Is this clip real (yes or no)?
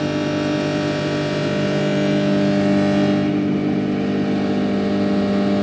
yes